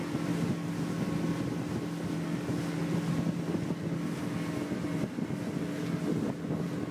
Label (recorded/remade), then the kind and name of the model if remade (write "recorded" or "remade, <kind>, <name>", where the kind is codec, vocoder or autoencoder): recorded